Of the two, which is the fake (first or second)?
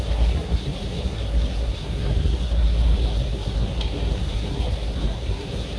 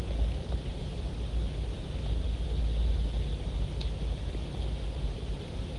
first